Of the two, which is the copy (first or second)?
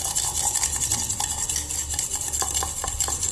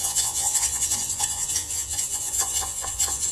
second